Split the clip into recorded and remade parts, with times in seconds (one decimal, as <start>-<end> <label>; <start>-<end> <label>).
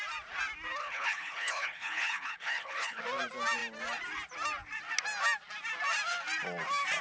0.0-0.8 recorded; 0.8-3.0 remade; 3.0-7.0 recorded